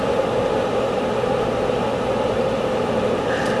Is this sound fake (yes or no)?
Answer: no